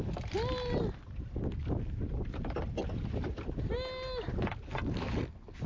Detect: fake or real real